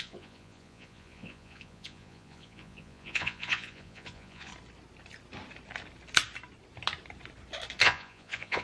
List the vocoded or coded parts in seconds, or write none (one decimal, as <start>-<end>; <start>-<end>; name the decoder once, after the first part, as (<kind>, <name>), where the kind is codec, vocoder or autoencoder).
0.0-4.5 (vocoder, Vocos); 7.8-8.6